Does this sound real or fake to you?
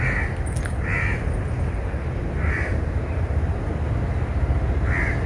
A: real